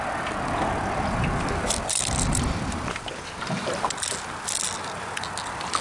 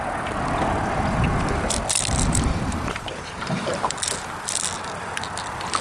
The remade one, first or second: second